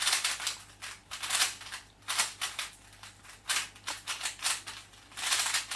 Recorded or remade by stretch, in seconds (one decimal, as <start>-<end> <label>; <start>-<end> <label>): 0.0-5.8 recorded